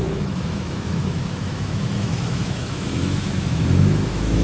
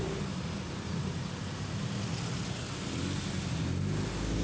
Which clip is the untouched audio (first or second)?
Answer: second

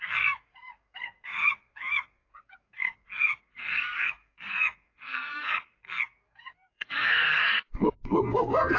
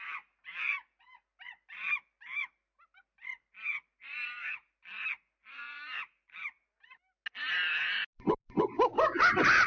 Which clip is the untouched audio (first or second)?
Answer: second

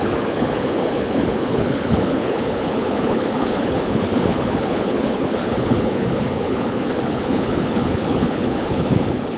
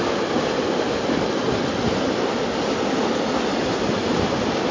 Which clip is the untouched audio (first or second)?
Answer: second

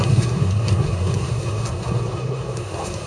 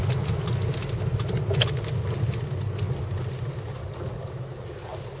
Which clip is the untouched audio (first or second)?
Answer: second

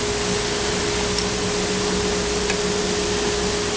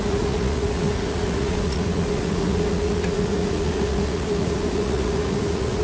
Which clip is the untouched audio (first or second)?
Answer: first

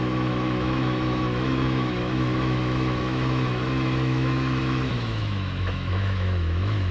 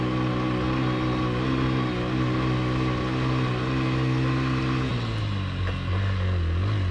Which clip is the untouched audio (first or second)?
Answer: second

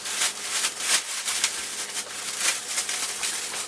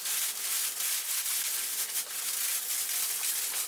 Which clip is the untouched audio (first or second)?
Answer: second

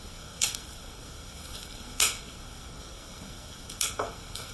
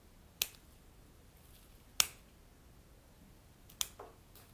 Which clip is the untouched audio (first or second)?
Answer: second